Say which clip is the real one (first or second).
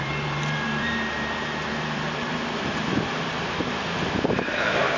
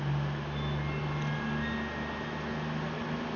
second